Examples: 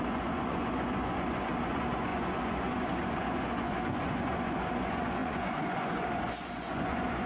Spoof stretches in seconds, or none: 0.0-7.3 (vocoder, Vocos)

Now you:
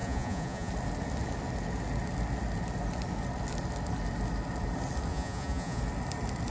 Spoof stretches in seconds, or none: 0.0-0.7 (vocoder, Vocos); 5.1-5.8

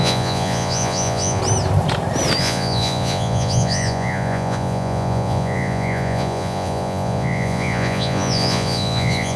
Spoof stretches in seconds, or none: 0.0-1.4 (vocoder, Vocos); 2.4-9.4

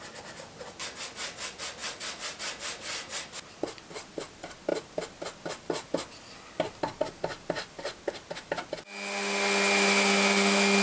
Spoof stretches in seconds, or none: none

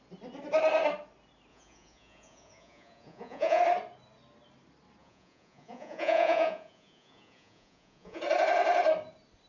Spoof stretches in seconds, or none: 1.5-3.6 (vocoder, Vocos); 5.0-8.2

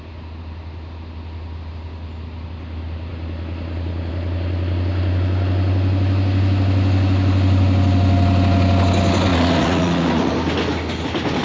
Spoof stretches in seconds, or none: 9.3-10.3 (vocoder, Vocos)

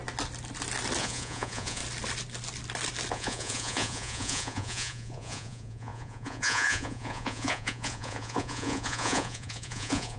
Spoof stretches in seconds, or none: 1.0-1.8 (vocoder, Vocos); 3.1-10.2

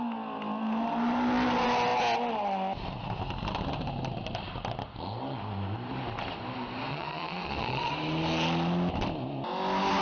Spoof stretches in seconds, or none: 6.9-7.9 (vocoder, Vocos)